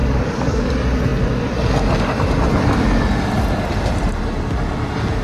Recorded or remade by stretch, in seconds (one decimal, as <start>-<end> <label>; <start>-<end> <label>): 0.0-0.7 remade; 0.7-5.2 recorded